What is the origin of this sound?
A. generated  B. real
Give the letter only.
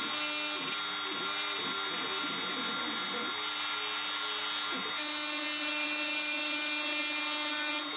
B